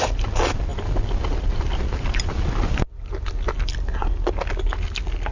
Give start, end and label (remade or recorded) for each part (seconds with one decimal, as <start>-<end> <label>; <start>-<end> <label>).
0.0-5.3 recorded